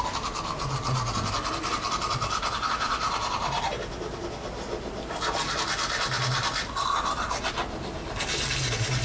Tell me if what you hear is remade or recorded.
recorded